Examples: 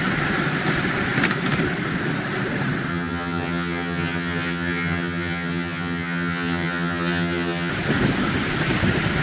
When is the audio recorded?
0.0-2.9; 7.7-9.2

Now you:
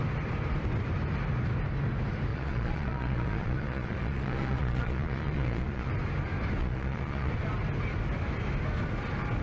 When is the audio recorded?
0.0-2.3; 5.9-6.6; 7.3-9.4